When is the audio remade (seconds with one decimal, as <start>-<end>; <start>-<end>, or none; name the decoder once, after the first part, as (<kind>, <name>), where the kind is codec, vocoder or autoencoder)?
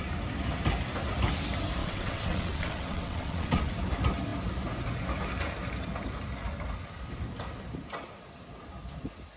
1.8-3.7 (vocoder, WaveNeXt)